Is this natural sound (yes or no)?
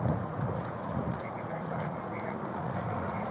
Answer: no